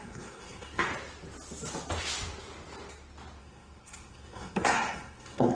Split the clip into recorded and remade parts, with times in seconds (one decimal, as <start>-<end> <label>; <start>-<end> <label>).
0.0-0.9 remade; 0.9-3.4 recorded; 3.4-5.5 remade